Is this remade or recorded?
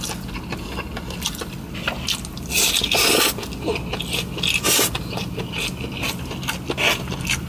recorded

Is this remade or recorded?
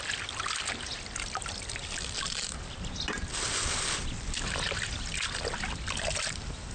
recorded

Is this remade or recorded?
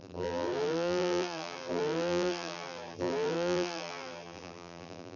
remade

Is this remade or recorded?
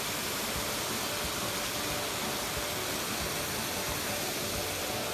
recorded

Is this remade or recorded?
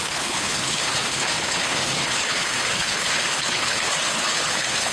remade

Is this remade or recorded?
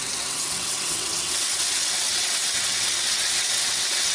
remade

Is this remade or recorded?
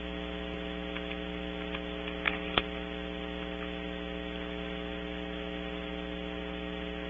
recorded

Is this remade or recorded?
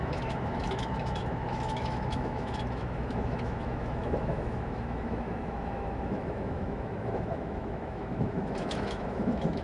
remade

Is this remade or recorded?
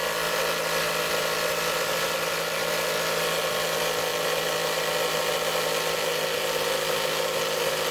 recorded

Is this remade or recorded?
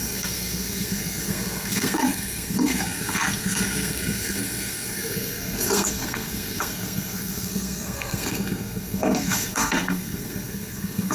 remade